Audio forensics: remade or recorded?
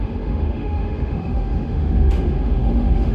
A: remade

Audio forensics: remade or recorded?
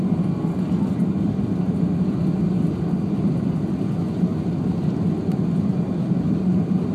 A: recorded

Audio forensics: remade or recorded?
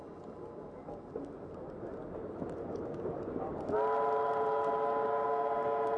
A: recorded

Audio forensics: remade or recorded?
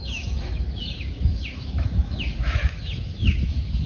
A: remade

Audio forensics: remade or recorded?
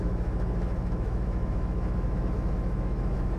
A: remade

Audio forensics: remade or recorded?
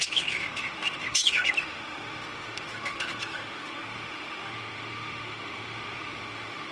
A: remade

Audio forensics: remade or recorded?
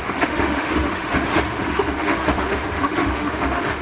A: remade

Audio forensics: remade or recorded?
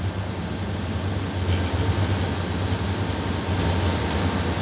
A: recorded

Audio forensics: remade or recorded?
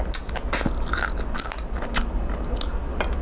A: recorded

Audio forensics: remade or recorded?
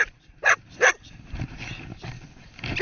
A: recorded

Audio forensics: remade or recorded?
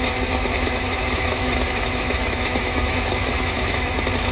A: remade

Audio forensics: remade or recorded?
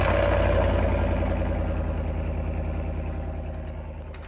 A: recorded